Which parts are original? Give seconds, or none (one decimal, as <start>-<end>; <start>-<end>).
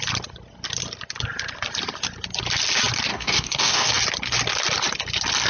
0.0-3.1; 3.9-5.5